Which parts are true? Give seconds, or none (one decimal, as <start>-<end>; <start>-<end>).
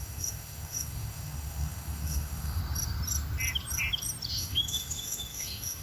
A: 2.6-4.4